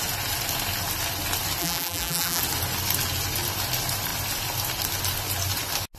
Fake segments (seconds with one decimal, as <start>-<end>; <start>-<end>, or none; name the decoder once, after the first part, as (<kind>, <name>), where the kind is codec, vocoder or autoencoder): 1.6-2.4 (vocoder, BigVGAN v2)